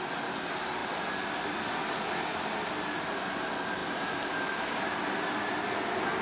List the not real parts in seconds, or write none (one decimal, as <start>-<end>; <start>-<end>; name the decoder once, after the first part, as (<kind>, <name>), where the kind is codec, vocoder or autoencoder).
none

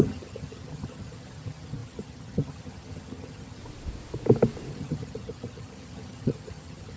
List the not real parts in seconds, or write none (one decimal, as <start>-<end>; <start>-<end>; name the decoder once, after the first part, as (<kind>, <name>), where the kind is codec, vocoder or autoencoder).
0.0-3.6 (vocoder, HiFi-GAN); 4.7-7.0

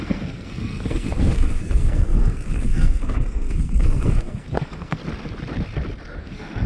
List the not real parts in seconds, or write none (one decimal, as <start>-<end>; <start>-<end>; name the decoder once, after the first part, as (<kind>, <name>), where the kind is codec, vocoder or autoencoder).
0.0-5.0 (codec, SNAC); 6.2-6.7

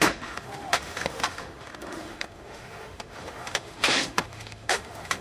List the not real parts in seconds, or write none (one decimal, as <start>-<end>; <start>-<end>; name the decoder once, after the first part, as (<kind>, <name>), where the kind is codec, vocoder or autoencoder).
0.0-5.2 (autoencoder, DAC-VAE)

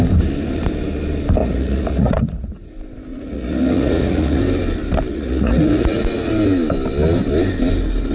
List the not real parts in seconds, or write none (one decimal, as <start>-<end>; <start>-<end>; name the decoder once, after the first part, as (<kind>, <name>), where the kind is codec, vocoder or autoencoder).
1.4-2.7 (vocoder, Vocos); 3.1-4.4; 5.1-6.3

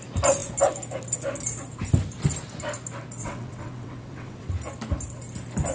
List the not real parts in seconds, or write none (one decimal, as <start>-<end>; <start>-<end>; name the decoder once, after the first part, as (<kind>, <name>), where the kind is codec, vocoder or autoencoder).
3.2-4.5 (vocoder, WaveNeXt)

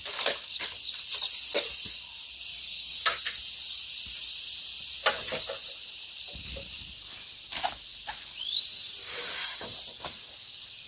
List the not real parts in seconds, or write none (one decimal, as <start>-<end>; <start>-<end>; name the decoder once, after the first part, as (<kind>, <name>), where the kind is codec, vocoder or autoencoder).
2.5-3.2 (codec, DAC); 9.0-9.7

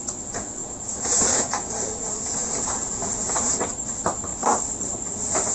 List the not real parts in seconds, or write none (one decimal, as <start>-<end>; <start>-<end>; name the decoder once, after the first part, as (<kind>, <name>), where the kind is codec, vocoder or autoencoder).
0.6-3.7 (vocoder, Vocos)